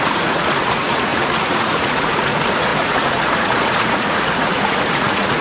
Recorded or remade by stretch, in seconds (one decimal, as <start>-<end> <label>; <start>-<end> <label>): 0.0-5.4 remade